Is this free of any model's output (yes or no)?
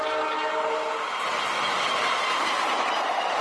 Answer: yes